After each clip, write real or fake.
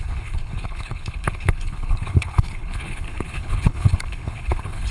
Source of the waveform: fake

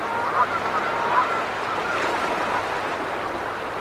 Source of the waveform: real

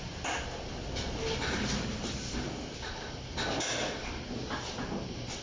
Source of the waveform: real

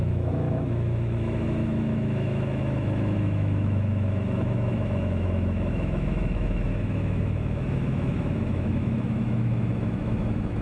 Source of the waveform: fake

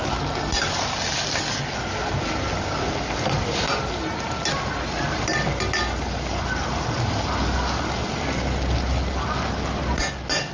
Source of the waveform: real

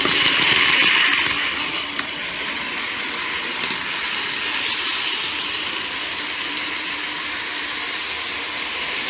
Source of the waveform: real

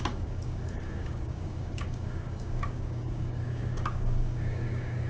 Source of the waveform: fake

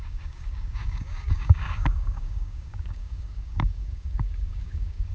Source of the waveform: fake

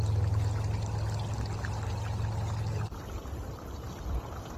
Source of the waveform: real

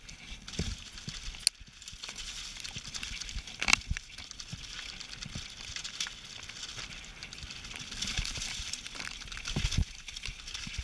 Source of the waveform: real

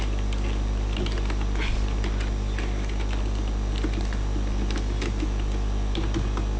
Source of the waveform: real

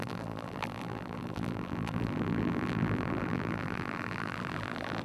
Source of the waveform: fake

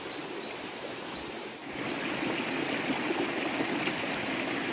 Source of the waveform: real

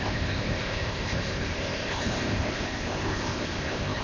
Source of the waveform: fake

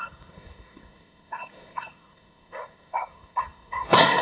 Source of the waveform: fake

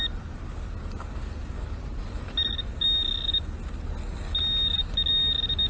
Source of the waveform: real